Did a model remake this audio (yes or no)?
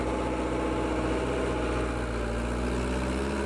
no